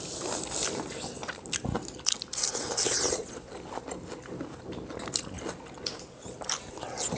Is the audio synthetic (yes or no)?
no